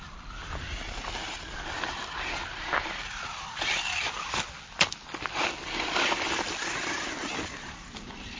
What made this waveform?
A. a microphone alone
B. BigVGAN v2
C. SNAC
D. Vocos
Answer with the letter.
A